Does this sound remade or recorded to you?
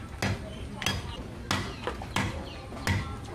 recorded